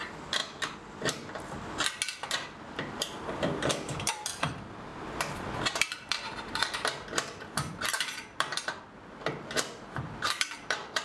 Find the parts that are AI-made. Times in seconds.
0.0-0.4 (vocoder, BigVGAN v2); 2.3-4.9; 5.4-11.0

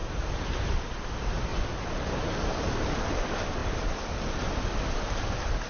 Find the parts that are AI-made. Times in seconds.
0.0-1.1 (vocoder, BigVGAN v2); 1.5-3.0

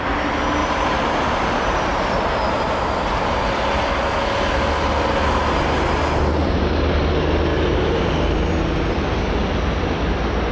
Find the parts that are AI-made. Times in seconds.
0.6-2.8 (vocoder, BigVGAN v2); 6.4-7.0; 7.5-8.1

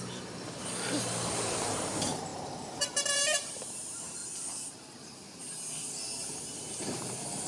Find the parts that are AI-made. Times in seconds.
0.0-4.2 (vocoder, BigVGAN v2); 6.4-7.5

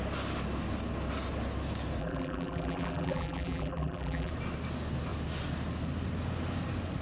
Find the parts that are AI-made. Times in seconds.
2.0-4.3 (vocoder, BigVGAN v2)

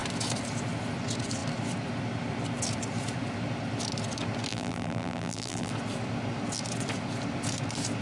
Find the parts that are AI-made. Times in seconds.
4.5-5.7 (vocoder, BigVGAN v2)

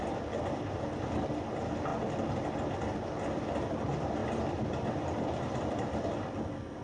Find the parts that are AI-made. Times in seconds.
1.9-2.7 (vocoder, BigVGAN v2); 4.2-6.8

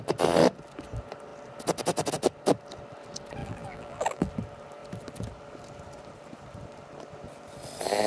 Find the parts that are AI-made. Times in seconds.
3.4-4.3 (vocoder, BigVGAN v2)